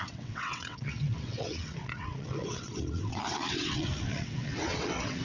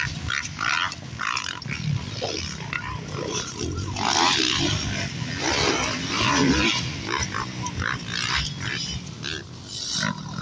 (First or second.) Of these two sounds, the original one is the second